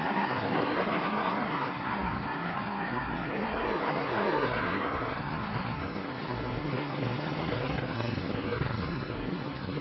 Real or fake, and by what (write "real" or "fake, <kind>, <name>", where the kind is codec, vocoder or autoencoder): fake, codec, SNAC